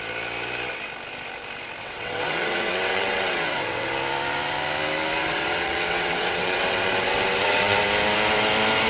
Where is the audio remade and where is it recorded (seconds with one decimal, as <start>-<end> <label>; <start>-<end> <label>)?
0.0-1.8 recorded; 1.8-3.9 remade; 3.9-5.2 recorded; 5.2-7.8 remade; 7.8-8.9 recorded

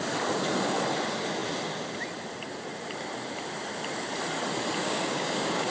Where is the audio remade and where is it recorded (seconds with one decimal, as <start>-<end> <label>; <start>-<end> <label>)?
0.0-4.8 recorded; 4.8-5.7 remade

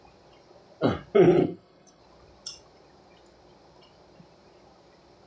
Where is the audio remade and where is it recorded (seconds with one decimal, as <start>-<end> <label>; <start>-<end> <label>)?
0.0-1.4 recorded; 1.4-2.0 remade; 2.0-5.3 recorded

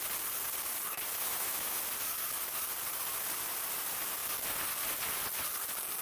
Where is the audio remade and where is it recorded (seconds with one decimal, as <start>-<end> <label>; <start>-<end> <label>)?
0.0-1.2 recorded; 1.2-1.8 remade; 1.8-6.0 recorded

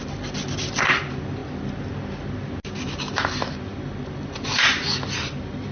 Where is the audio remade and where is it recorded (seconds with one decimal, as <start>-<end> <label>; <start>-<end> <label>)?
0.0-5.7 recorded

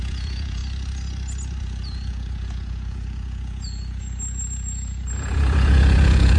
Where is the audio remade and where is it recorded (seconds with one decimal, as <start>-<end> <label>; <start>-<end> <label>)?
0.0-0.6 remade; 0.6-1.6 recorded; 1.6-6.4 remade

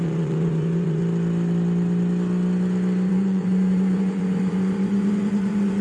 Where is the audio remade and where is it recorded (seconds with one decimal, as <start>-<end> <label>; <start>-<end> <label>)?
0.0-1.0 remade; 1.0-3.1 recorded; 3.1-5.8 remade

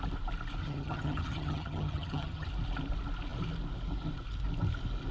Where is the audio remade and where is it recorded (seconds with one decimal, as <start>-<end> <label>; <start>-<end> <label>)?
0.0-0.6 recorded; 0.6-2.5 remade; 2.5-5.1 recorded